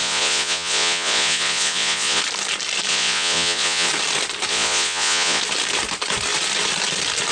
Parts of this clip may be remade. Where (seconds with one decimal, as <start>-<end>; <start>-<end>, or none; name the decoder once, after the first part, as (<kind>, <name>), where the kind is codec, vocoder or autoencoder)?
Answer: 0.0-2.2 (vocoder, Vocos); 2.9-3.9; 4.5-5.4

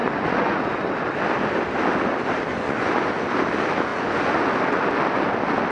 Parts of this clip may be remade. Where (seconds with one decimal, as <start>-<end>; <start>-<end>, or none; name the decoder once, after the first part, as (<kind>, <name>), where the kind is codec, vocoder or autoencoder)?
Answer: 0.0-0.9 (vocoder, Vocos); 2.5-3.1; 3.9-4.5

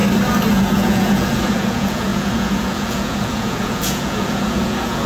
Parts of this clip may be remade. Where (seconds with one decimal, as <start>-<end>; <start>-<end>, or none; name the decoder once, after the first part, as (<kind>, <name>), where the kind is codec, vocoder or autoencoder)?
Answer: 0.5-5.1 (vocoder, Vocos)

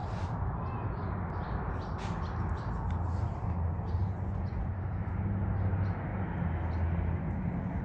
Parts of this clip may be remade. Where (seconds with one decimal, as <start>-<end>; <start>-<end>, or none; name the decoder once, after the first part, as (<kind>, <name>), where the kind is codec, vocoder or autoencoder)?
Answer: 4.0-4.7 (vocoder, Vocos)

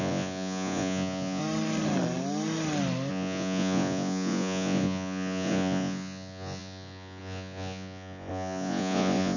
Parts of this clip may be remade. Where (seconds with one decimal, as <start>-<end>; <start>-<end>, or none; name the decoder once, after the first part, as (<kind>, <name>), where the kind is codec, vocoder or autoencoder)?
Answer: 0.0-1.4 (vocoder, Vocos); 3.1-9.4

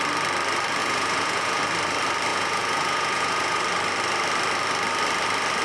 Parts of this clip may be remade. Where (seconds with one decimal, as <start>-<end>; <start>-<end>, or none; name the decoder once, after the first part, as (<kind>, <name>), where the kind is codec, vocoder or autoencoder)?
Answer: 0.8-1.6 (vocoder, Vocos); 2.3-3.6

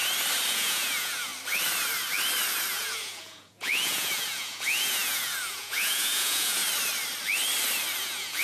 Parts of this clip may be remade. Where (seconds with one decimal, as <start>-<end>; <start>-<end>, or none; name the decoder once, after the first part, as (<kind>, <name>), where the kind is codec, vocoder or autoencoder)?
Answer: 0.5-1.3 (vocoder, Vocos); 2.7-6.6; 8.0-8.4

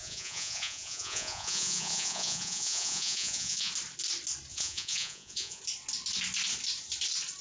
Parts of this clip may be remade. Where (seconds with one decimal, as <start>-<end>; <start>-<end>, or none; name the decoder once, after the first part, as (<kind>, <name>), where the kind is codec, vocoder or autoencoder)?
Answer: 0.0-3.7 (vocoder, Vocos); 4.5-5.6